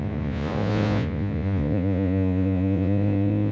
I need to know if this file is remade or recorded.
remade